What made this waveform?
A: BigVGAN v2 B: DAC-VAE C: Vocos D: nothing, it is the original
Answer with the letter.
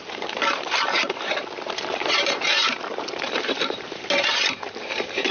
A